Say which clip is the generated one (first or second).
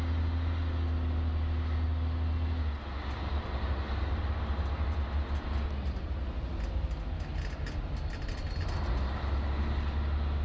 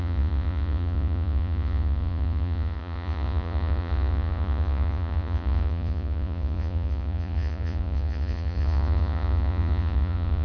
second